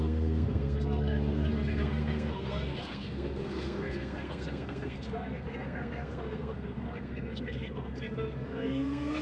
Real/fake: fake